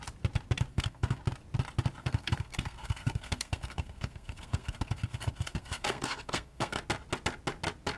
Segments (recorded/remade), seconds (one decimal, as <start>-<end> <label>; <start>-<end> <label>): 0.0-0.7 recorded; 0.7-1.2 remade; 1.2-2.0 recorded; 2.0-6.8 remade; 6.8-8.0 recorded